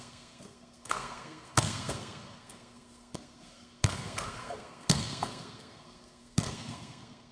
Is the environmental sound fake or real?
fake